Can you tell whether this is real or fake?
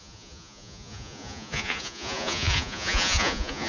fake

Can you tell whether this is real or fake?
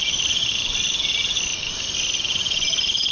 real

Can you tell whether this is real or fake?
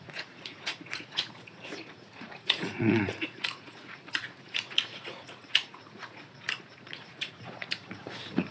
fake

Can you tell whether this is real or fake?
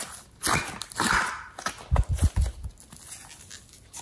real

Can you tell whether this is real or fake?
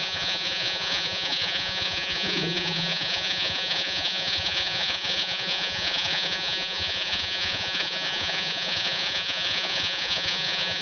fake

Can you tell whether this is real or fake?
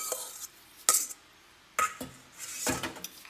real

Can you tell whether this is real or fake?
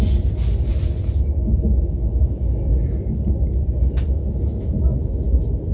real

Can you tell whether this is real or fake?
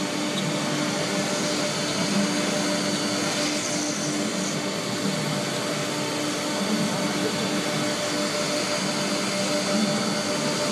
real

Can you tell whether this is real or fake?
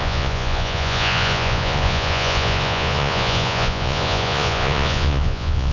fake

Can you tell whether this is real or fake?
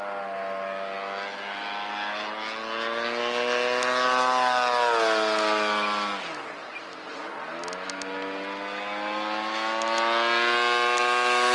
real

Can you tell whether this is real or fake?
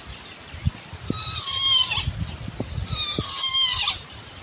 real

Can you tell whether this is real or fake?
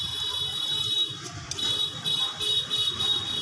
real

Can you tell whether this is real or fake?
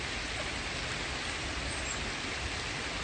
real